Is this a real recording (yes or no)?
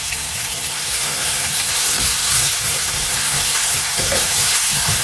no